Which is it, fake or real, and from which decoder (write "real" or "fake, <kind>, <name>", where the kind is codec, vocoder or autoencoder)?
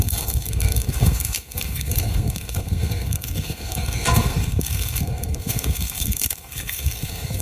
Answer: fake, codec, SNAC